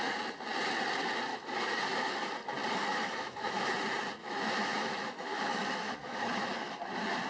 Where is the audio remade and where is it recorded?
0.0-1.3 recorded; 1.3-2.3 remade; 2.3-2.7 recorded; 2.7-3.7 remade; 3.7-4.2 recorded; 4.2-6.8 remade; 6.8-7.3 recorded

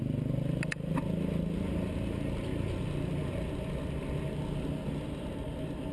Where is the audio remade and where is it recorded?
0.0-5.9 recorded

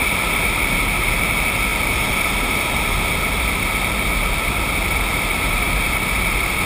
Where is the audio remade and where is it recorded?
0.0-6.7 recorded

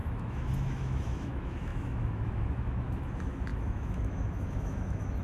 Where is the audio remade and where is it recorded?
0.0-5.2 remade

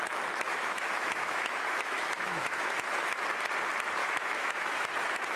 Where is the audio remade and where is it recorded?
0.0-0.5 recorded; 0.5-3.1 remade; 3.1-4.0 recorded; 4.0-4.9 remade; 4.9-5.4 recorded

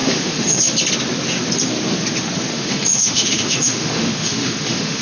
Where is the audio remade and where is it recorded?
0.0-0.6 remade; 0.6-2.5 recorded; 2.5-5.0 remade

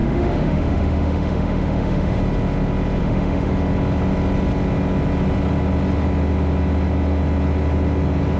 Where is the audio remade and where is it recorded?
0.0-2.2 remade; 2.2-3.0 recorded; 3.0-3.5 remade; 3.5-8.4 recorded